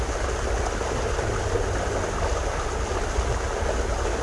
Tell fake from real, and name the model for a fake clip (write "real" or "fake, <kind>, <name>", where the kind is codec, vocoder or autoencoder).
real